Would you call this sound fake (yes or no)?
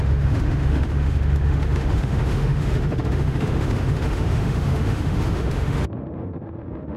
yes